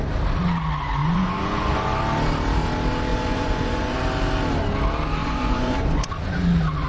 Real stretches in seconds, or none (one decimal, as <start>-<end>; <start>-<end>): 0.0-1.0; 2.0-3.1; 4.0-5.2; 6.1-6.9